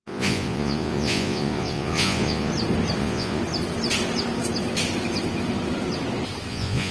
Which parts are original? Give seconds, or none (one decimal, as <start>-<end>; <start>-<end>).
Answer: 2.5-3.0; 3.4-6.5